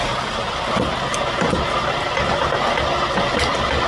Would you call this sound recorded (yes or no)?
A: yes